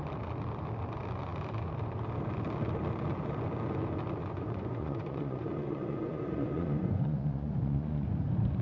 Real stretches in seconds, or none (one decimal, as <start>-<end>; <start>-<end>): 0.0-4.2; 8.1-8.6